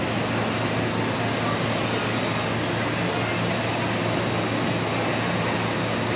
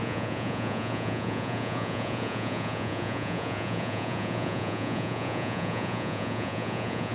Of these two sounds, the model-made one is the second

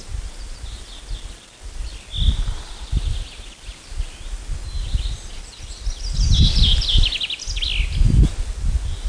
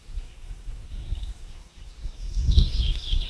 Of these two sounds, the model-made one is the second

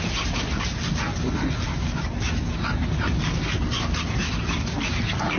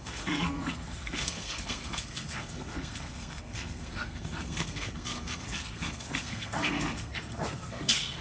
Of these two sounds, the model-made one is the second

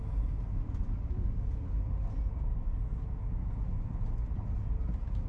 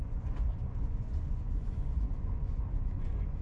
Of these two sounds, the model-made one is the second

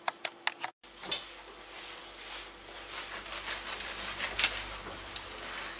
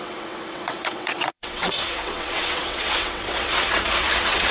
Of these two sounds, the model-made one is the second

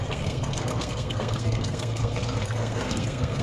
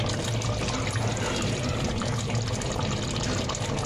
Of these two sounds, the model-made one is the first